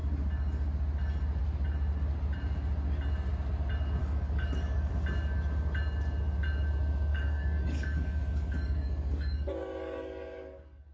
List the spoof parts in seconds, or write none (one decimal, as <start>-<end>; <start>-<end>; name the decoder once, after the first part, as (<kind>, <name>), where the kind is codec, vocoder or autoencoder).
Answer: 4.0-4.9 (codec, DAC); 7.1-10.9